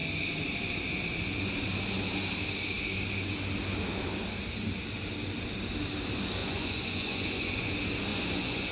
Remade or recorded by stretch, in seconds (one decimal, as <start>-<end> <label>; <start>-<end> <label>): 0.0-6.4 recorded; 6.4-7.7 remade; 7.7-8.1 recorded; 8.1-8.7 remade